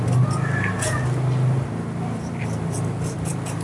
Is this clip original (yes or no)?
yes